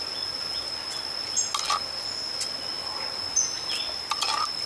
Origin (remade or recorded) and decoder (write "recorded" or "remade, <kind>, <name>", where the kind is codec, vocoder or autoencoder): recorded